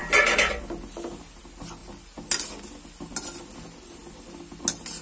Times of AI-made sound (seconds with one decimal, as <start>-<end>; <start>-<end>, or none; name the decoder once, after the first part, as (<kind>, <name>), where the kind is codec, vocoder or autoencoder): none

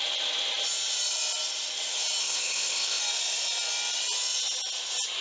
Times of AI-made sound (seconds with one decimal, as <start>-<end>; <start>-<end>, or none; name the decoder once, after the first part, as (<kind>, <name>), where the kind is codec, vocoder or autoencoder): 2.2-3.0 (codec, ZipCodec)